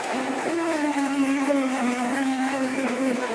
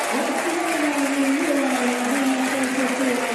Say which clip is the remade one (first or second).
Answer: first